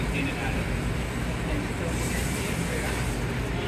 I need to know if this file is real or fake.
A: real